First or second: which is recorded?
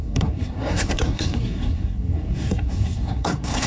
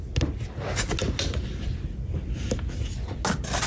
second